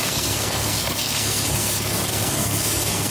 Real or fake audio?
fake